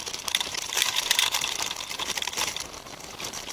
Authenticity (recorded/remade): remade